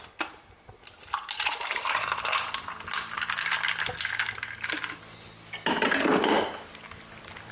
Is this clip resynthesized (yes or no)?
no